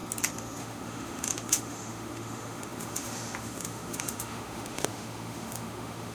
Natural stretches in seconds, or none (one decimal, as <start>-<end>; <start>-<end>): 0.0-0.6